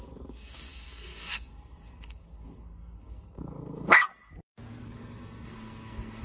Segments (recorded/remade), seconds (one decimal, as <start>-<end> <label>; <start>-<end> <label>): 0.0-4.1 remade; 4.1-4.8 recorded; 4.8-6.2 remade